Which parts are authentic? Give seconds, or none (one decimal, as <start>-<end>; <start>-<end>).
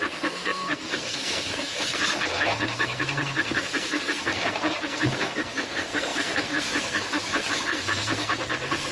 none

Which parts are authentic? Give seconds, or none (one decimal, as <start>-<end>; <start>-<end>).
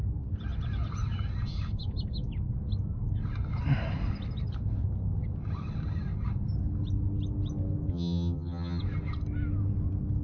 0.0-7.9; 8.8-10.2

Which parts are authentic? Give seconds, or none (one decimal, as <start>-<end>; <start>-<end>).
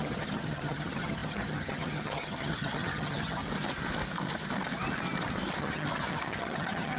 3.4-5.6